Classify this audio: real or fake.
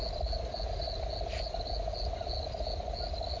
real